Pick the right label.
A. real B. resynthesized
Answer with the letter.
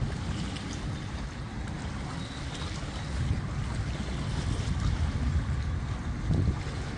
A